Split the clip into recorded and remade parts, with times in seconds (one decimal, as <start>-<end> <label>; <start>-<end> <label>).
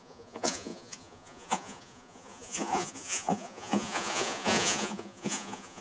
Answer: 0.0-5.8 remade